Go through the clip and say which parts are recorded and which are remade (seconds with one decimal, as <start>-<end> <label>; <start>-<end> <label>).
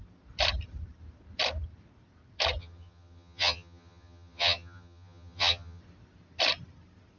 0.0-2.6 recorded; 2.6-5.8 remade; 5.8-7.2 recorded